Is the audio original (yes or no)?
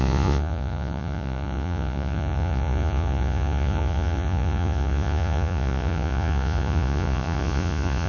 no